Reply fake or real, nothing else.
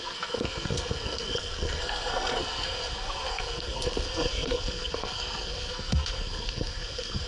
fake